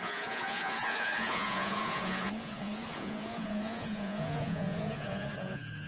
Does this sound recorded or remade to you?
remade